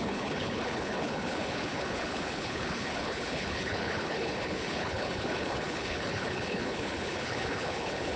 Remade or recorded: remade